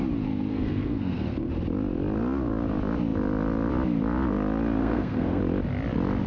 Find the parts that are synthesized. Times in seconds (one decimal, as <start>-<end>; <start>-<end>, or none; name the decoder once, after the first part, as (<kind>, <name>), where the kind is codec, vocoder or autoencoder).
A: 0.5-1.5 (codec, SNAC); 4.8-5.4